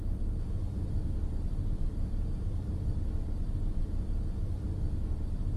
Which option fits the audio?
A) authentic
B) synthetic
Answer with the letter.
A